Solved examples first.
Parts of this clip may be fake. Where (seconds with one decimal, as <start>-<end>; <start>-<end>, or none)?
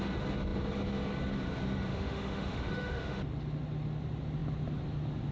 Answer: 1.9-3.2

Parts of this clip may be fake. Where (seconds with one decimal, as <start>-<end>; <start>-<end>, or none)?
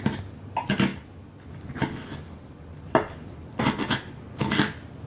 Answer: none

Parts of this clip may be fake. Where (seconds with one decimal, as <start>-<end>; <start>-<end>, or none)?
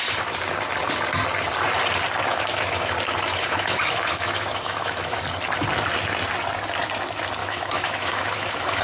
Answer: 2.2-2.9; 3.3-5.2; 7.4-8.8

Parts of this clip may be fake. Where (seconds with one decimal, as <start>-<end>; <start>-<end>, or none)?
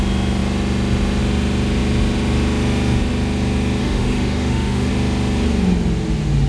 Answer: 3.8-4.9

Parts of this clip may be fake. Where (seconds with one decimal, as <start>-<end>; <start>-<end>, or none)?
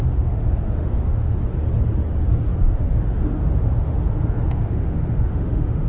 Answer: 0.0-1.5; 2.6-4.0; 4.6-5.9